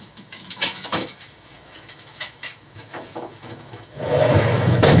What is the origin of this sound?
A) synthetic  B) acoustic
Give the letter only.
A